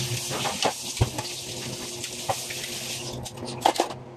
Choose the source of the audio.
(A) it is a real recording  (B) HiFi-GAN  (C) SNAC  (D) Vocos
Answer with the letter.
A